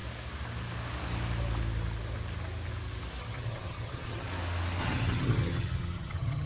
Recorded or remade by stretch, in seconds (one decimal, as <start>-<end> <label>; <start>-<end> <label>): 0.0-3.2 recorded; 3.2-4.3 remade; 4.3-4.8 recorded; 4.8-6.5 remade